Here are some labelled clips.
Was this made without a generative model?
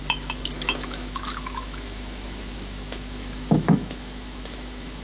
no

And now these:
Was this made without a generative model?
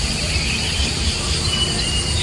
yes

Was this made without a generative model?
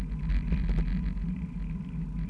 yes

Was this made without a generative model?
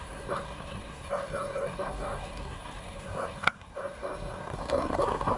no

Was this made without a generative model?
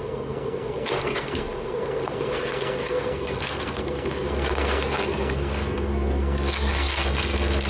no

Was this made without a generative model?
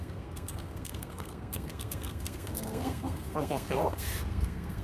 no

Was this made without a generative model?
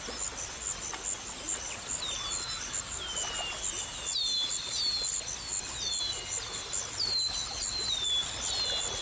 yes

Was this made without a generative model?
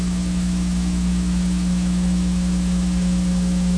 no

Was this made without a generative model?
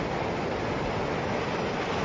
yes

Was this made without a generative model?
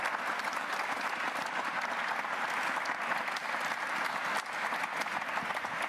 yes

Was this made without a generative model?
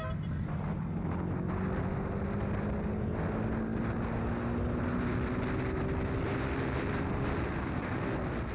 yes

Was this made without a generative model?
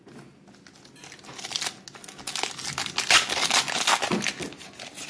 yes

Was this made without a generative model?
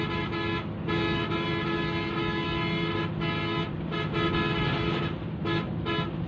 yes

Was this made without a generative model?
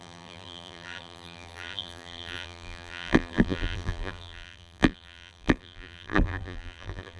no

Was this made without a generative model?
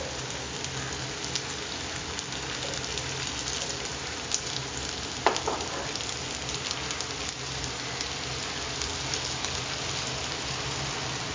yes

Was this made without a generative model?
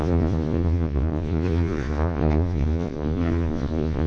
no